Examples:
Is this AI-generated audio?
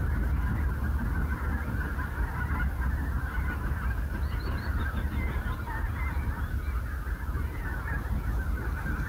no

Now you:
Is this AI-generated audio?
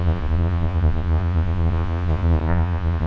yes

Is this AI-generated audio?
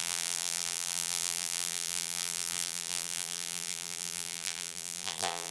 yes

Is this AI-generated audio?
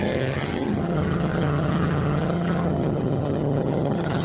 yes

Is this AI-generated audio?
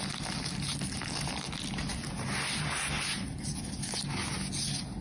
no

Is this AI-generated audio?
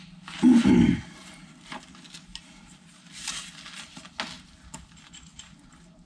no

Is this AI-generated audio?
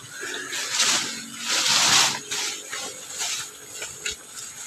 no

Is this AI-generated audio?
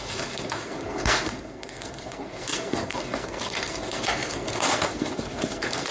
yes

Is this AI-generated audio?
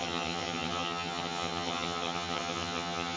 yes